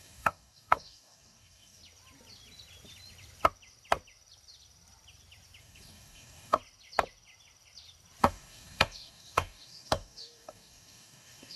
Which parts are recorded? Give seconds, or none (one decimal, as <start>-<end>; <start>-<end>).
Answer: 1.8-5.6; 6.6-8.2